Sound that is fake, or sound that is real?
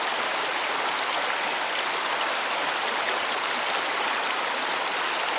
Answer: real